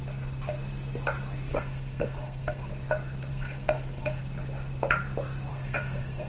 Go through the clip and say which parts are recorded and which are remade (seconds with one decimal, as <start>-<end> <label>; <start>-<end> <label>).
0.0-1.5 recorded; 1.5-2.7 remade; 2.7-3.3 recorded; 3.3-4.2 remade; 4.2-5.5 recorded; 5.5-6.3 remade